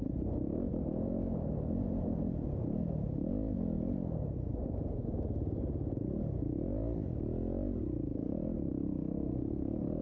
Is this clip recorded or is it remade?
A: recorded